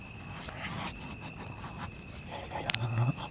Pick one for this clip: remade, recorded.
recorded